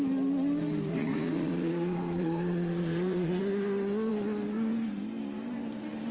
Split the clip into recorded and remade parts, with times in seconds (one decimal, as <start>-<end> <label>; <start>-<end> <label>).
0.0-0.9 recorded; 0.9-3.4 remade; 3.4-6.1 recorded